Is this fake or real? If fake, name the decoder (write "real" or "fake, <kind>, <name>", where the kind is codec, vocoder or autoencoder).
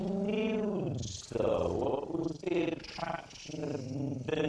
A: real